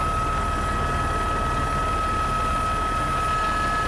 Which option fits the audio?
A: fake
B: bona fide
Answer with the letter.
B